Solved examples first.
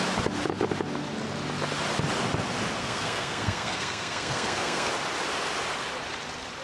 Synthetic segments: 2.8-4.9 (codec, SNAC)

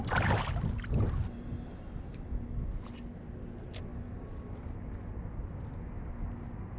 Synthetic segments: 3.9-5.2 (vocoder, BigVGAN v2)